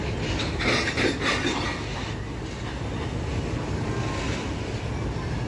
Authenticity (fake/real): real